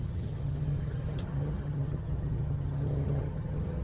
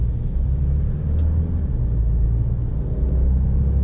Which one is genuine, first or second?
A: second